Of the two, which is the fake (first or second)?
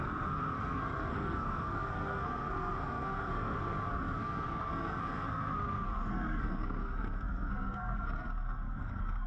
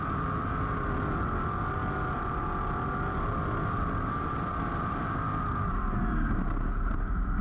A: first